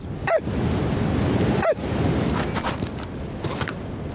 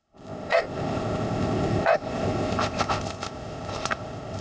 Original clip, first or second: first